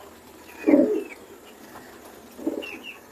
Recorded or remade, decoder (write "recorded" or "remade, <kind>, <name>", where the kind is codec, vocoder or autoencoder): recorded